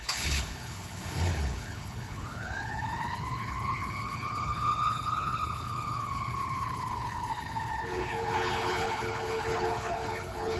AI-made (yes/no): yes